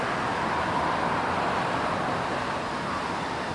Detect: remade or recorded recorded